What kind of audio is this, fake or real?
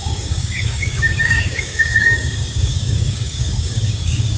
fake